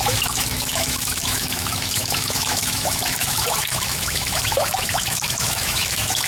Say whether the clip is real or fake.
fake